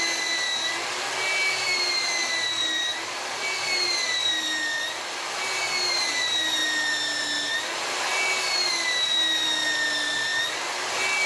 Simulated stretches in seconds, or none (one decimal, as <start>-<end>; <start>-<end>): none